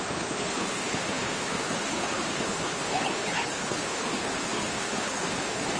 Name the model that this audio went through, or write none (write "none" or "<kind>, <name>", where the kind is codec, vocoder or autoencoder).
codec, HILCodec